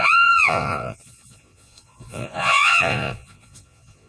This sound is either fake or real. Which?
fake